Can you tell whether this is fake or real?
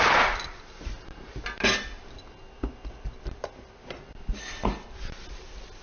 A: real